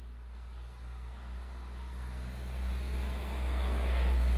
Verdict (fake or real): fake